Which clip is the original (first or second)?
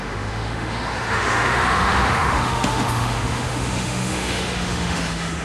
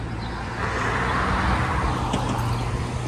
second